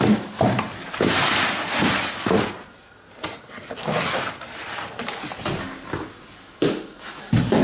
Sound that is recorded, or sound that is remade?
recorded